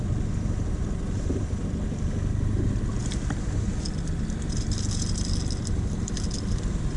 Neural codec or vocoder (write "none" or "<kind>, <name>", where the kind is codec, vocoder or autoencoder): none